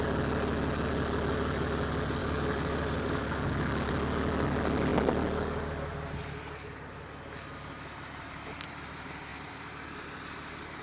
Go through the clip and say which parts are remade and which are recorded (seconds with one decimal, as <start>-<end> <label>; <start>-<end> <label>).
0.0-2.2 recorded; 2.2-3.9 remade; 3.9-10.8 recorded